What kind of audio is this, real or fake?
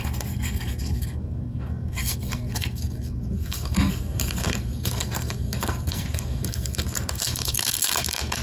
fake